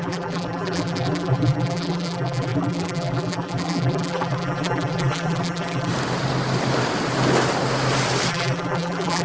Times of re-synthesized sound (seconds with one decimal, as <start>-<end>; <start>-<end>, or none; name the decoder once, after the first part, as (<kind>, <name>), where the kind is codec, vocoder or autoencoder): 0.0-5.9 (vocoder, BigVGAN v2); 8.3-9.2